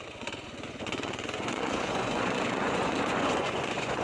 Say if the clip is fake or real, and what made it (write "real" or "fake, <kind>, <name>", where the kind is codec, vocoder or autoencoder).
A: fake, vocoder, Vocos